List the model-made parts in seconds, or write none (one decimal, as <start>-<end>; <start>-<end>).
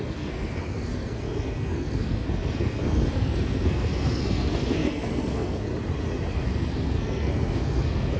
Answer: 0.0-5.7; 6.3-8.2